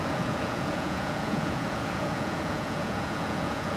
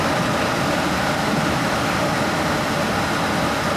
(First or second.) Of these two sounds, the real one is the second